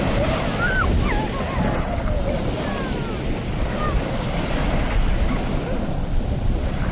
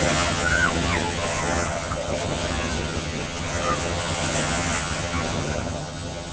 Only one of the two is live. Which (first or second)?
first